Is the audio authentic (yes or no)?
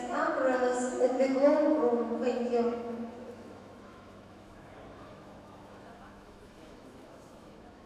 no